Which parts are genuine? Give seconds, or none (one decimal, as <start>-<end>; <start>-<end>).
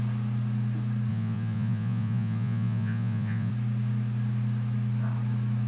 0.0-1.1; 3.5-5.7